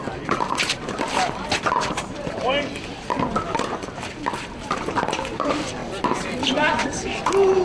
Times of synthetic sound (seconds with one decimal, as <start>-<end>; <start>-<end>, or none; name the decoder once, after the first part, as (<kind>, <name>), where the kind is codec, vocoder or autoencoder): 0.0-5.8 (vocoder, BigVGAN v2); 6.3-7.6